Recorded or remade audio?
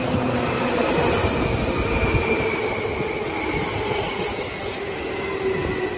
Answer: recorded